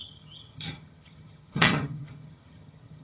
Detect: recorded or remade remade